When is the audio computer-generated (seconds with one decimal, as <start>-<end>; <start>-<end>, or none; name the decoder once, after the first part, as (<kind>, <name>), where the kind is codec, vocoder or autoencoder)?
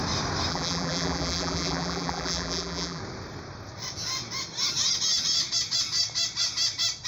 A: 0.5-3.0 (vocoder, BigVGAN v2)